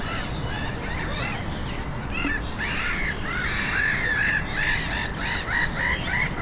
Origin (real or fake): real